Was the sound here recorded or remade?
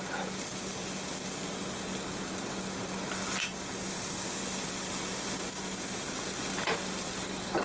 recorded